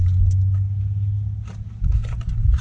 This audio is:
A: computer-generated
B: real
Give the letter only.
B